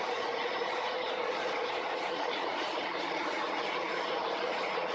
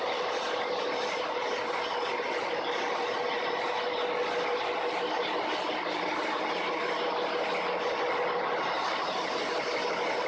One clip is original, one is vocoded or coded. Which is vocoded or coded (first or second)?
first